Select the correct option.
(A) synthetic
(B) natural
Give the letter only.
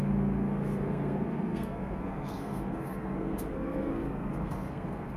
A